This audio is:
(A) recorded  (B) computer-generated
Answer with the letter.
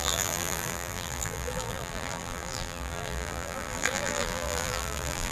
B